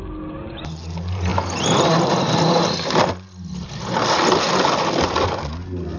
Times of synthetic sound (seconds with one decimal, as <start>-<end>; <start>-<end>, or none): none